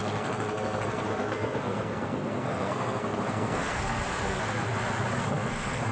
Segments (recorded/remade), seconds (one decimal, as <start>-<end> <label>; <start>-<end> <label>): 0.0-4.7 remade; 4.7-5.2 recorded; 5.2-5.9 remade